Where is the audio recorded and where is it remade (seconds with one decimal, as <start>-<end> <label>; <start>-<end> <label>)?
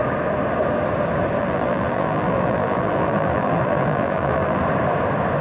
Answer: 0.0-1.4 recorded; 1.4-4.6 remade; 4.6-5.4 recorded